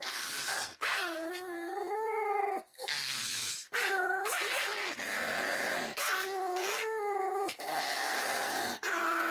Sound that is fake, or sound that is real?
fake